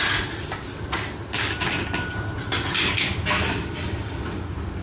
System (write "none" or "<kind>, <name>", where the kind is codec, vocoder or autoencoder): none